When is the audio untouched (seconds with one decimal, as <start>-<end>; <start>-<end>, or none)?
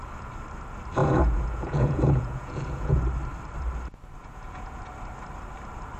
0.0-1.0; 3.0-4.2; 4.8-6.0